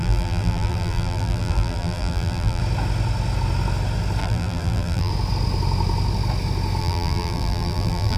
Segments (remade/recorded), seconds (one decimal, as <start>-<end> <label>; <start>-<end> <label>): 0.0-2.6 remade; 2.6-4.2 recorded; 4.2-5.1 remade; 5.1-6.8 recorded; 6.8-8.2 remade